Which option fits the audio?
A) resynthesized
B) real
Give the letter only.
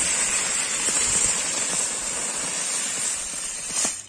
B